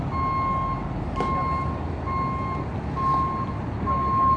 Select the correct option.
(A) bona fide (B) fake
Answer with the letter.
A